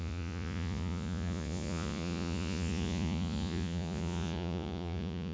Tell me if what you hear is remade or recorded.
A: remade